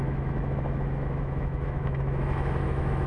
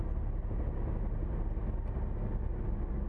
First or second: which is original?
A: second